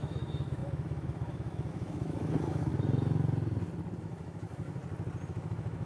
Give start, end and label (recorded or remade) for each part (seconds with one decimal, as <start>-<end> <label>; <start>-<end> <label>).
0.0-2.7 remade; 2.7-4.0 recorded; 4.0-4.8 remade; 4.8-5.3 recorded; 5.3-5.8 remade